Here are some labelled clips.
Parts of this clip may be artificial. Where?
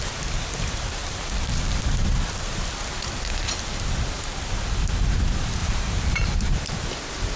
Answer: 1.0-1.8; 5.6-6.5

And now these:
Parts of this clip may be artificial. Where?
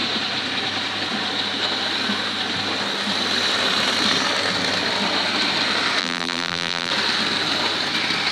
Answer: 6.0-6.9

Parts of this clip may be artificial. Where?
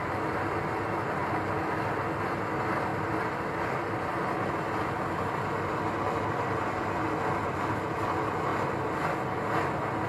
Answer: none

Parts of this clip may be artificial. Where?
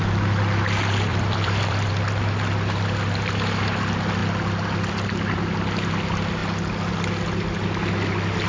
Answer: 1.1-1.9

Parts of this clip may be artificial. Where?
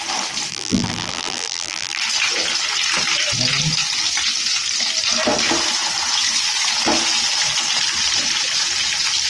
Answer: 0.5-2.0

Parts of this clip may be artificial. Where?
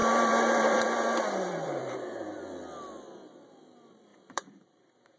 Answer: 0.0-2.4; 4.1-4.8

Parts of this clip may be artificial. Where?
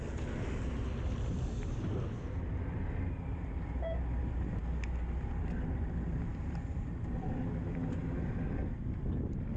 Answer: 6.3-7.5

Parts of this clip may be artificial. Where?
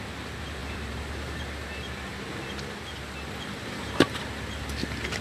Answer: 0.6-1.4; 3.6-4.2